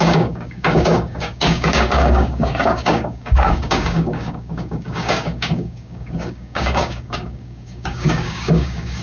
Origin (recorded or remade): remade